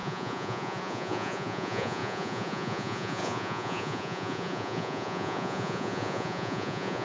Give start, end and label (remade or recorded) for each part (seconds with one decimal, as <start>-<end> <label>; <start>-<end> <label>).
0.0-7.0 remade